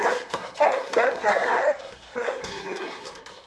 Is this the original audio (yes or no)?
no